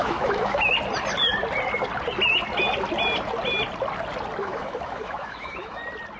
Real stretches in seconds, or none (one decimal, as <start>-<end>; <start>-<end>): 0.7-4.4; 5.8-6.2